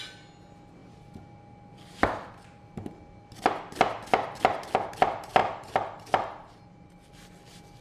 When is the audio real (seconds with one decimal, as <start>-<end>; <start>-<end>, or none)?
0.0-5.4; 7.1-7.8